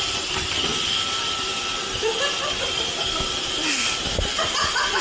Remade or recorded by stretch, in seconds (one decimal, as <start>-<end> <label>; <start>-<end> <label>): 0.0-0.7 recorded; 0.7-3.7 remade; 3.7-5.0 recorded